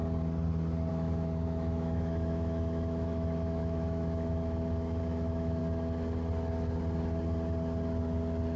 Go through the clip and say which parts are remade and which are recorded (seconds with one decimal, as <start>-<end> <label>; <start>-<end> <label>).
0.0-0.9 recorded; 0.9-5.6 remade; 5.6-8.6 recorded